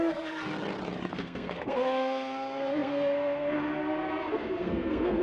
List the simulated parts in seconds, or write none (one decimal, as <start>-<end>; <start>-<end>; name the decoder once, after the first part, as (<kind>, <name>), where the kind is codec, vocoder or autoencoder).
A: 0.0-0.5 (codec, SNAC); 1.1-5.2